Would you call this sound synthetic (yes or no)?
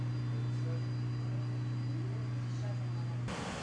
no